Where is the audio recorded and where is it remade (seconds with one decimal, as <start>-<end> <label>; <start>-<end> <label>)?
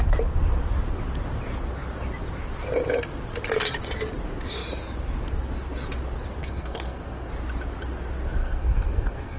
0.0-6.4 recorded; 6.4-7.3 remade; 7.3-8.4 recorded; 8.4-9.4 remade